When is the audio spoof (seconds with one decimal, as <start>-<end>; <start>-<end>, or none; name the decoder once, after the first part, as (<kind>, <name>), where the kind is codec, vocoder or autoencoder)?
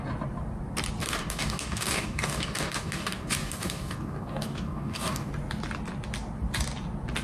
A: 1.0-5.3 (codec, DAC)